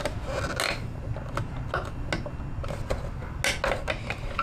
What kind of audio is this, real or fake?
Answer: real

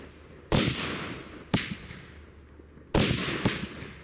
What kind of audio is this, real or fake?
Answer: real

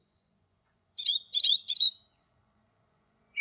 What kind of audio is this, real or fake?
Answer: fake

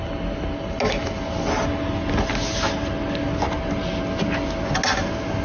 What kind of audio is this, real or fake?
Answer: real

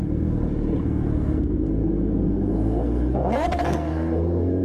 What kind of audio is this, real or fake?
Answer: fake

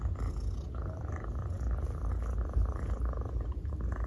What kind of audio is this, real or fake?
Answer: real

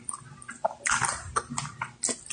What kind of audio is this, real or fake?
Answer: real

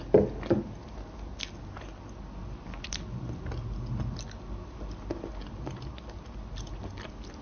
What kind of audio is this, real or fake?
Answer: real